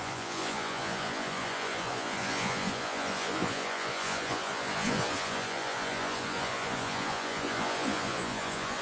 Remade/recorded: remade